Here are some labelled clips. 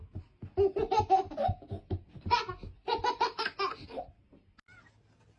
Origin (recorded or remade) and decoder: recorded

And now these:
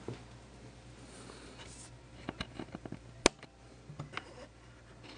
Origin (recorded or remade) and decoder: recorded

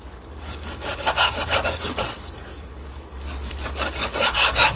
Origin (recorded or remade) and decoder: remade, codec, DAC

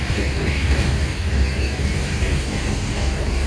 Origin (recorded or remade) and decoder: remade, codec, DAC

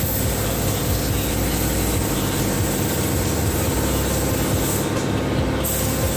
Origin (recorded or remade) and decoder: recorded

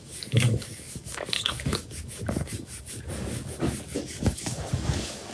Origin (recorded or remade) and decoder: remade, codec, DAC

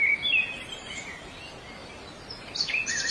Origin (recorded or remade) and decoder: recorded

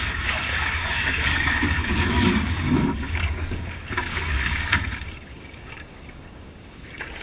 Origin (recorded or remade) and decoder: remade, codec, DAC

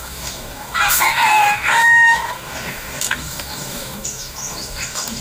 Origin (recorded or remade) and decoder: remade, codec, DAC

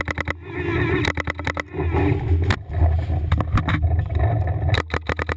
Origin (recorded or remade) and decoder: recorded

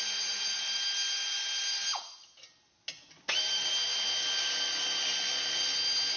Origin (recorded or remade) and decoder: recorded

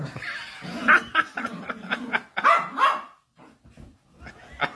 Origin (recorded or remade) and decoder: recorded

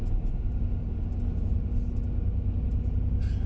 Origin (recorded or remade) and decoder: recorded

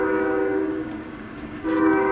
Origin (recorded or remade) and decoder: remade, codec, DAC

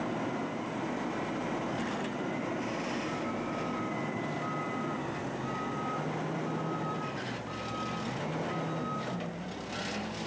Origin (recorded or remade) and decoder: recorded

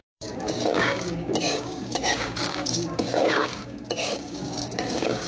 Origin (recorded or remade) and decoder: remade, codec, DAC